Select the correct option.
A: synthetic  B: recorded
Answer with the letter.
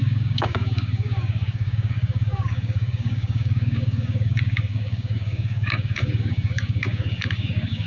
A